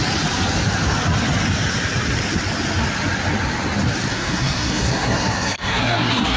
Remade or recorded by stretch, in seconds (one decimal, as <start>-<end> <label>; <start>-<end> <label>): 0.0-4.1 recorded; 4.1-6.4 remade